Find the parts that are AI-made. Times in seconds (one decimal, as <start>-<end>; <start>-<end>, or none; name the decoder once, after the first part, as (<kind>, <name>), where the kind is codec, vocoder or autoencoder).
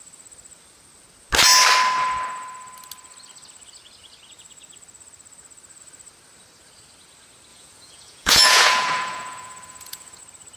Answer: 7.5-10.2 (vocoder, Vocos)